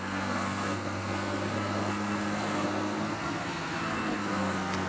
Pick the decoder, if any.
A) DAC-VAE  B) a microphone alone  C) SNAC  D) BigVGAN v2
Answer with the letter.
C